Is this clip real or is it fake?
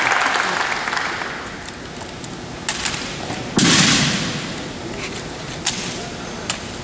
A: real